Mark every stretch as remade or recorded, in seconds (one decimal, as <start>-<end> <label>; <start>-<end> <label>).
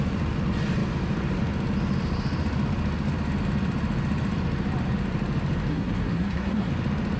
0.0-5.7 recorded; 5.7-6.7 remade; 6.7-7.2 recorded